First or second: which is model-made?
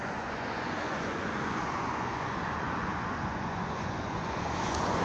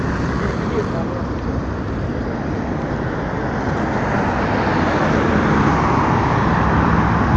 first